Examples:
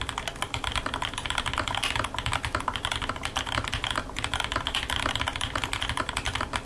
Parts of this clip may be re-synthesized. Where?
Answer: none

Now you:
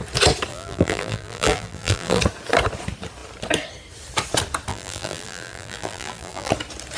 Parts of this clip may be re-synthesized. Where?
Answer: 0.5-2.2; 4.7-6.5